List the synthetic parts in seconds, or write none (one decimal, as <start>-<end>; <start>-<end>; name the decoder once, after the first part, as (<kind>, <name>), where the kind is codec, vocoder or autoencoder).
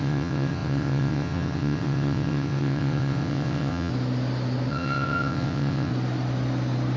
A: 0.0-3.9 (vocoder, WaveNeXt); 4.7-5.9